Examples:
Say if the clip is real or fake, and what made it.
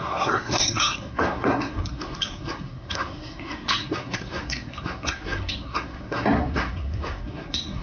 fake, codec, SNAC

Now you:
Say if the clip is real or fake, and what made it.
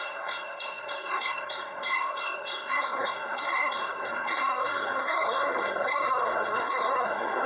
fake, codec, SNAC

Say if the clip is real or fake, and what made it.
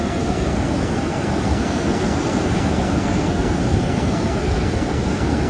fake, codec, SNAC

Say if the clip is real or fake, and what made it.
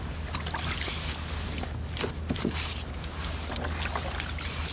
real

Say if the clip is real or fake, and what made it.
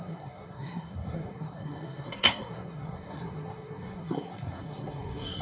fake, codec, SNAC